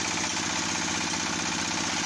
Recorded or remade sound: recorded